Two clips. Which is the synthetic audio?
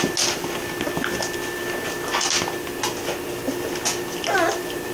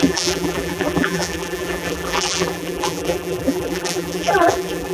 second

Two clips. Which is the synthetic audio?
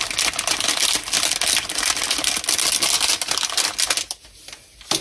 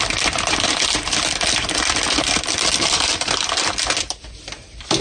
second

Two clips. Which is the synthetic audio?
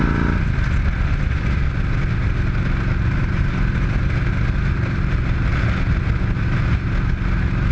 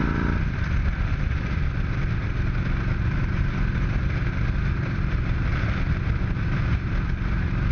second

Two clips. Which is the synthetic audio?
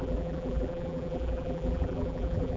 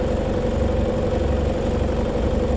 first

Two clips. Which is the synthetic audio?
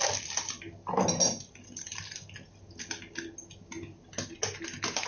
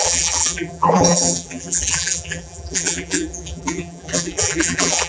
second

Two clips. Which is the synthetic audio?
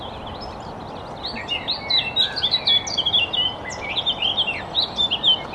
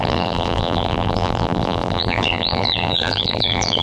second